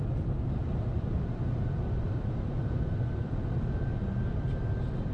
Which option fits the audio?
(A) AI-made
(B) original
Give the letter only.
B